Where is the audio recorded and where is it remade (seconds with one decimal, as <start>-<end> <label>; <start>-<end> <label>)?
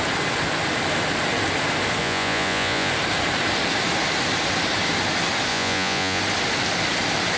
0.0-2.0 recorded; 2.0-2.9 remade; 2.9-5.5 recorded; 5.5-6.2 remade; 6.2-7.4 recorded